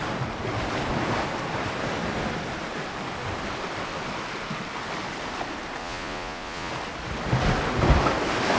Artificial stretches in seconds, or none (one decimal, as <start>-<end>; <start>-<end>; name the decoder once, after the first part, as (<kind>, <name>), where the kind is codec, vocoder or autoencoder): 5.8-6.7 (vocoder, Vocos)